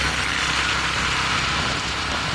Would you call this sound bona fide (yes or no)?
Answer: yes